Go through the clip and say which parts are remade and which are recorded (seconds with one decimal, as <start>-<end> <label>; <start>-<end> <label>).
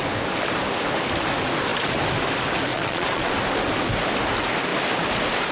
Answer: 0.0-2.7 recorded; 2.7-3.3 remade; 3.3-5.5 recorded